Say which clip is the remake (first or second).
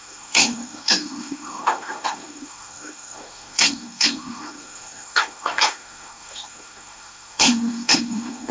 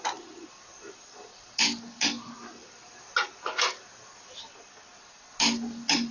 first